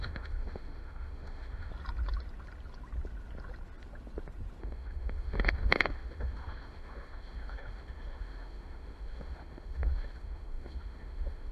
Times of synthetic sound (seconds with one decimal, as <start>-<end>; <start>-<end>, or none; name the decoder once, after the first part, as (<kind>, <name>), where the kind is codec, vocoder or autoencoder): 0.0-1.7 (autoencoder, DAC-VAE); 4.6-11.5